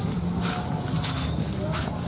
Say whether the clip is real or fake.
real